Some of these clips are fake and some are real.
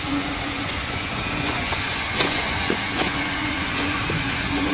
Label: fake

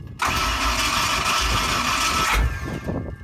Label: real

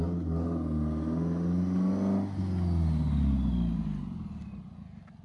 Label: real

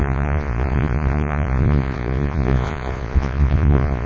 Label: fake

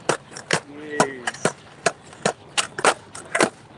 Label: real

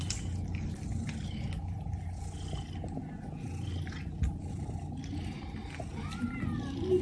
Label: real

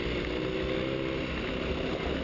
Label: real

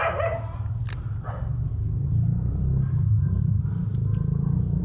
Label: real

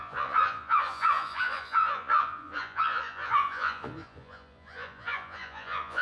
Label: fake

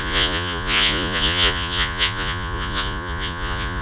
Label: fake